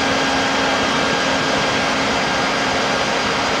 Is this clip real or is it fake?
real